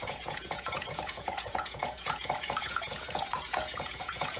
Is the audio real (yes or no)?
no